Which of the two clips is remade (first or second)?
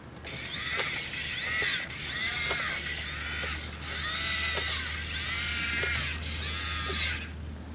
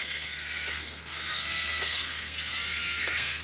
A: second